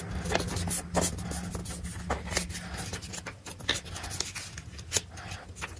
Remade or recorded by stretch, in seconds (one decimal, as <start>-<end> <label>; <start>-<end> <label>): 0.0-5.8 recorded